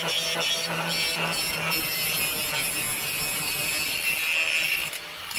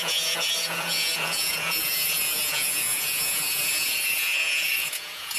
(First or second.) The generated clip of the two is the second